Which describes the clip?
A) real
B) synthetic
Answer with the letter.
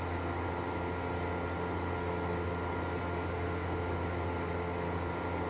A